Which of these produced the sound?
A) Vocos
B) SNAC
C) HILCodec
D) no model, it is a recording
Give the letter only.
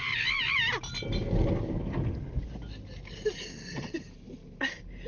D